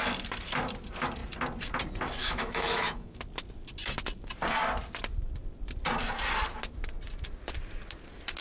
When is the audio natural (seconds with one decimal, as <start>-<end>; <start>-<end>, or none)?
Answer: 0.0-2.2; 3.2-8.4